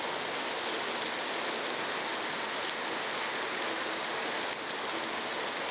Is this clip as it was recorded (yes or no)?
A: yes